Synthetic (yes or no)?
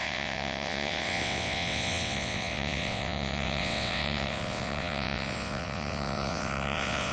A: yes